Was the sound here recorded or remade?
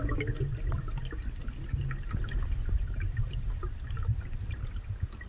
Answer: recorded